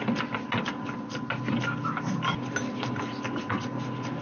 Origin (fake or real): real